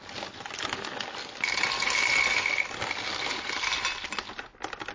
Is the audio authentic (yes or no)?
yes